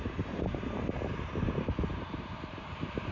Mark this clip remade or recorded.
remade